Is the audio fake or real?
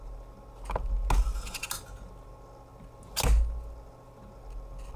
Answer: real